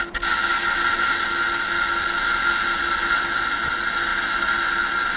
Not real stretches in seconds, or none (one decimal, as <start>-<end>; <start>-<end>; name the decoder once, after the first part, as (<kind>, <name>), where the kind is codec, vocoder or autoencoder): none